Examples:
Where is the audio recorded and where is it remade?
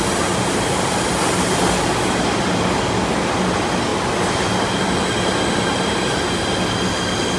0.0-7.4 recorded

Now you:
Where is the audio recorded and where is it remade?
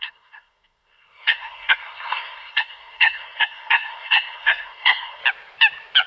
0.0-5.2 remade; 5.2-6.1 recorded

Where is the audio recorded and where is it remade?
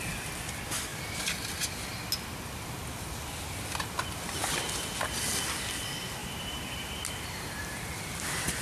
0.0-6.2 recorded; 6.2-8.0 remade; 8.0-8.6 recorded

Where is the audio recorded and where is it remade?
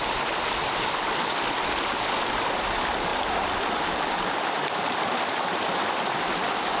0.0-6.8 recorded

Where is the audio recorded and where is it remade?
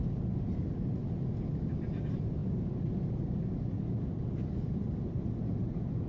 0.0-6.1 recorded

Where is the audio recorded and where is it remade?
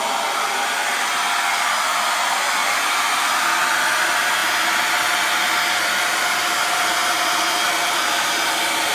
0.0-2.6 recorded; 2.6-3.3 remade; 3.3-8.9 recorded